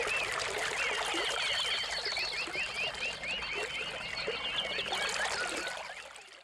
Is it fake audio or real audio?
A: real